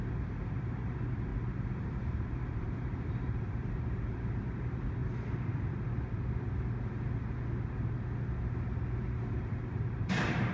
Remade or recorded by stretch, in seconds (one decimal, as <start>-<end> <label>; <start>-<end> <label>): 0.0-5.0 remade; 5.0-9.2 recorded; 9.2-10.5 remade